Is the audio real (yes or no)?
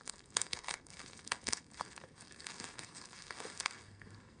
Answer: no